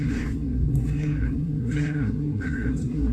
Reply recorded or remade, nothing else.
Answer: remade